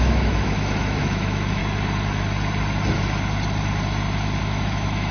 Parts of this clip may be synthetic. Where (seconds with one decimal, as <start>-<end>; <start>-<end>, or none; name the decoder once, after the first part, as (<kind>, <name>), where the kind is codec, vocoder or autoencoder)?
0.0-1.6 (autoencoder, DAC-VAE); 4.4-5.1